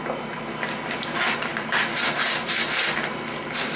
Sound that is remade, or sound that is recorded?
recorded